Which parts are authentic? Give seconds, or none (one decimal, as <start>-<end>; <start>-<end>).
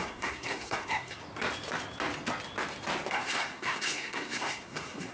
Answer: 1.2-3.1